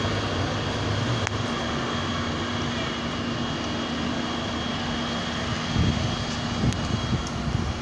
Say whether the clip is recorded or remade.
recorded